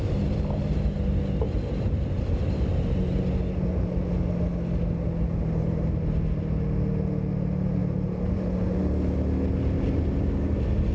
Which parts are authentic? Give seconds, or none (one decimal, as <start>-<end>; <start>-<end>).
0.0-10.9